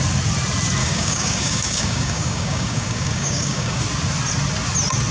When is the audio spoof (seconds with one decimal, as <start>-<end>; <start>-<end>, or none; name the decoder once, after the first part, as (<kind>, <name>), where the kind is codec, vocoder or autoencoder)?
0.8-3.8 (codec, DAC)